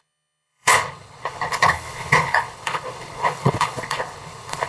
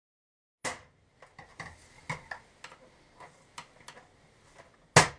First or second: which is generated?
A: first